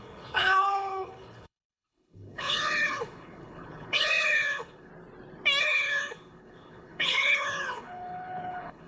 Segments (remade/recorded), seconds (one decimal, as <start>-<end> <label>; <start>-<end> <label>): 0.0-4.9 remade; 4.9-5.6 recorded; 5.6-8.9 remade